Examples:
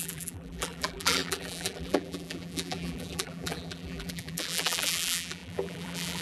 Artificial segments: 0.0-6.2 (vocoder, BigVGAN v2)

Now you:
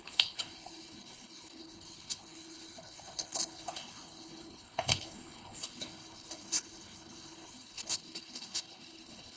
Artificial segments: 0.0-9.4 (codec, HILCodec)

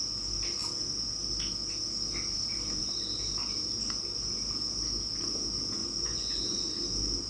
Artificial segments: 5.8-6.7 (vocoder, Vocos)